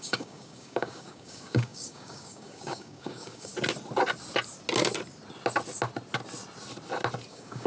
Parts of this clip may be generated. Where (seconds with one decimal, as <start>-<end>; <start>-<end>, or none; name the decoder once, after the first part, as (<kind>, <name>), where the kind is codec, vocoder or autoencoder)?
0.0-3.5 (codec, DAC); 7.3-7.7